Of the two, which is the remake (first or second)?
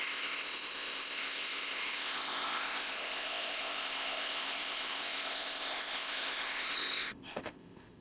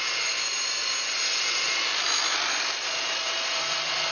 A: first